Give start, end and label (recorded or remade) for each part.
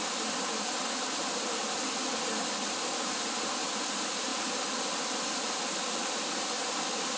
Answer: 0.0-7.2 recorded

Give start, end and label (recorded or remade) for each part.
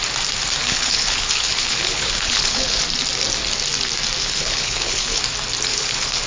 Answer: 0.0-0.6 recorded; 0.6-2.8 remade; 2.8-4.2 recorded; 4.2-5.2 remade; 5.2-5.7 recorded; 5.7-6.3 remade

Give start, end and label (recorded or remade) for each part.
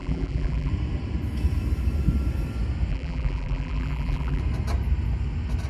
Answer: 0.0-0.7 remade; 0.7-2.9 recorded; 2.9-4.4 remade; 4.4-5.7 recorded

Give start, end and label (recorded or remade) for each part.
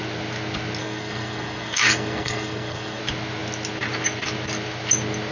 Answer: 0.0-0.8 recorded; 0.8-3.0 remade; 3.0-5.3 recorded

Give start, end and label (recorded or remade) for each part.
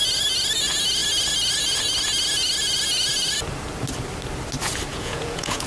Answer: 0.0-4.9 recorded; 4.9-5.7 remade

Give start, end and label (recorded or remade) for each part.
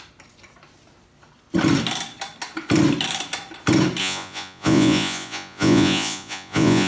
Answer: 0.0-4.0 recorded; 4.0-6.9 remade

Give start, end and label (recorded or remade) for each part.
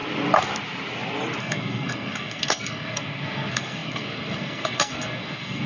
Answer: 0.0-1.4 recorded; 1.4-5.7 remade